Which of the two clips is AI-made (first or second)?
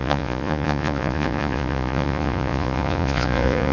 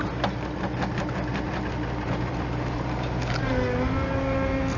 first